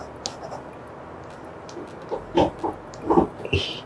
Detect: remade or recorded recorded